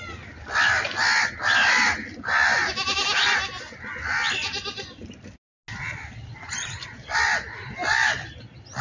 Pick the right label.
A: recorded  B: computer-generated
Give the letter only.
A